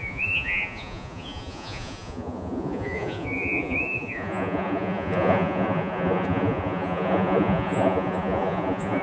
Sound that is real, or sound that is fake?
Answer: fake